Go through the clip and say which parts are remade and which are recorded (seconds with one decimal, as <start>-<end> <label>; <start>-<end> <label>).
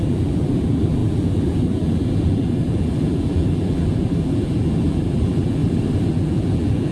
0.0-5.6 remade; 5.6-6.1 recorded; 6.1-6.9 remade